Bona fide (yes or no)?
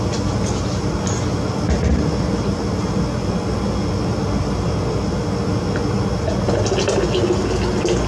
yes